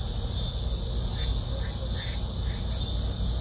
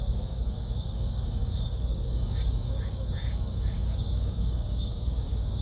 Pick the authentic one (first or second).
first